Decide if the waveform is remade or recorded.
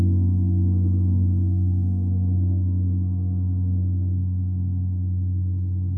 remade